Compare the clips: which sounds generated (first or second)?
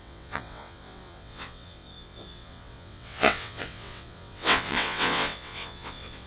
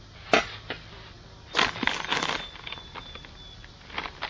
first